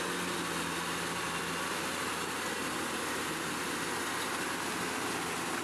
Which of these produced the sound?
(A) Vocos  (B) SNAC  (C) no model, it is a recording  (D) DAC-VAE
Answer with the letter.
C